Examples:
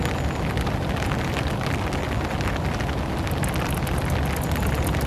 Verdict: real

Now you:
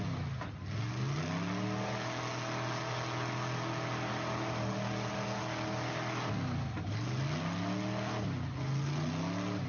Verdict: real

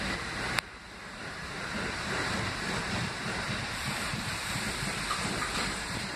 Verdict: fake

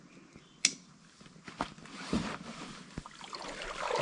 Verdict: real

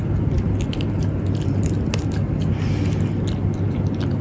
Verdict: real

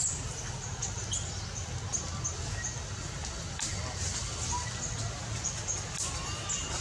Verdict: real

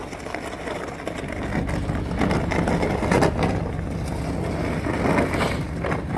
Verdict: real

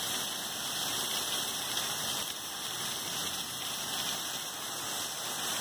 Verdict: real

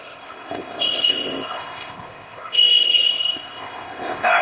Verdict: fake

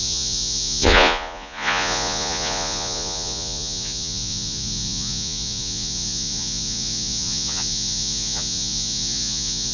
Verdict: fake